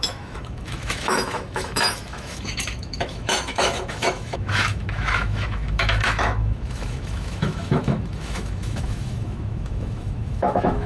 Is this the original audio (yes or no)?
no